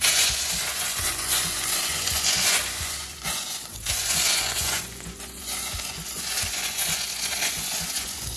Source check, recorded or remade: remade